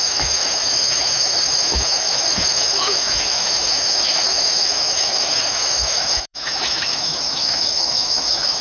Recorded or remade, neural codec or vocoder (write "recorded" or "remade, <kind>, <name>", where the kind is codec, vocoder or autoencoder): remade, autoencoder, DAC-VAE